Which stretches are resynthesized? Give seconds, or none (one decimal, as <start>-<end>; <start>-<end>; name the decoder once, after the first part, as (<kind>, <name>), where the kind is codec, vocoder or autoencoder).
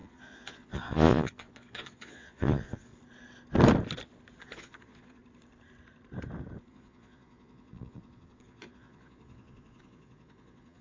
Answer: 0.0-2.9 (vocoder, Vocos); 4.4-5.2; 6.7-10.8